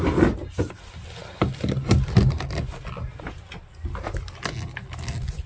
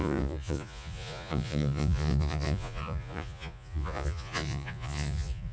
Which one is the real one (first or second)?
first